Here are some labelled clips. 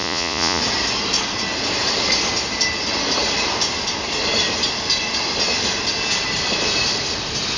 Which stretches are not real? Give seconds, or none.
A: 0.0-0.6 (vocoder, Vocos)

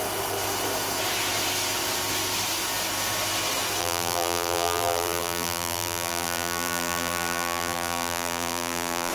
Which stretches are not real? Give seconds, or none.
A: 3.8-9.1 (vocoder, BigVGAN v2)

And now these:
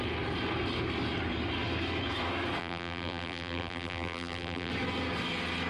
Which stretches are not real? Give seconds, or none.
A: 2.6-4.7 (vocoder, BigVGAN v2)

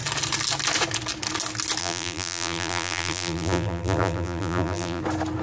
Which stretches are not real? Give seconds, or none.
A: 1.8-5.0 (vocoder, BigVGAN v2)